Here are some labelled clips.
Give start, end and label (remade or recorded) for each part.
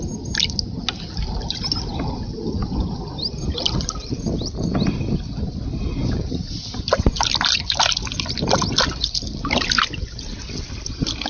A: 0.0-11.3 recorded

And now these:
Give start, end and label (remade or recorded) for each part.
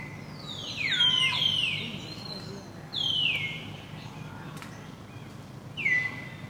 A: 0.0-0.8 recorded; 0.8-2.3 remade; 2.3-2.9 recorded; 2.9-4.3 remade; 4.3-6.5 recorded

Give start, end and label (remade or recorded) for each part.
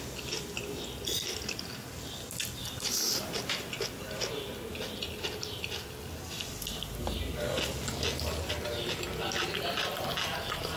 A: 0.0-2.6 recorded; 2.6-3.4 remade; 3.4-10.8 recorded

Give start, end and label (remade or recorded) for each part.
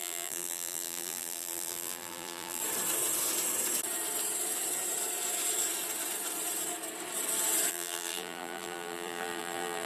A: 0.0-2.6 remade; 2.6-7.7 recorded; 7.7-9.9 remade